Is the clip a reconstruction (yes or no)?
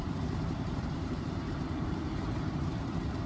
yes